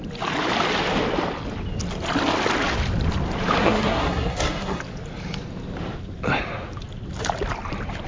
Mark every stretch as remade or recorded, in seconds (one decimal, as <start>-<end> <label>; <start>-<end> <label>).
0.0-3.6 recorded; 3.6-4.8 remade; 4.8-8.1 recorded

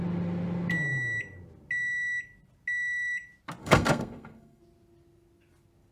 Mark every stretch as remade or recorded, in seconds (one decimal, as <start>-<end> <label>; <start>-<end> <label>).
0.0-3.6 recorded; 3.6-4.6 remade; 4.6-5.9 recorded

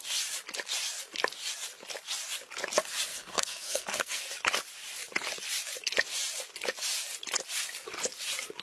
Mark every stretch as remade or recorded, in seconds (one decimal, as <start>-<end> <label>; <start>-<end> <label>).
0.0-3.1 recorded; 3.1-4.2 remade; 4.2-8.6 recorded

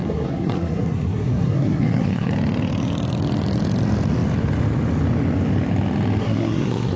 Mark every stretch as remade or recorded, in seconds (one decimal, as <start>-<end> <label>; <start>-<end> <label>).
0.0-2.3 remade; 2.3-6.2 recorded; 6.2-7.0 remade

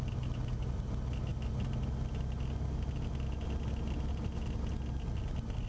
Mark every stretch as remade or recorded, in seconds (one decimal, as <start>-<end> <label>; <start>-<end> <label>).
0.0-5.7 recorded

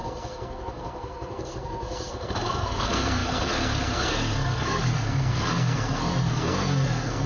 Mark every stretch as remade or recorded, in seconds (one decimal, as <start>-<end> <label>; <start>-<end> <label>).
0.0-7.3 remade

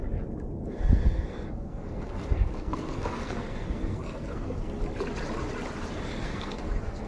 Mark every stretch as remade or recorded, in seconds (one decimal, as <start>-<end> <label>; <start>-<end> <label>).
0.0-0.6 recorded; 0.6-4.7 remade; 4.7-6.2 recorded; 6.2-7.1 remade